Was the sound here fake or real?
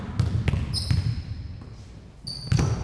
real